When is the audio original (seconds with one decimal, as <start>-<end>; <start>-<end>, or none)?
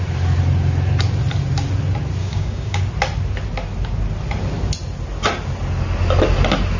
0.0-2.2; 2.8-6.8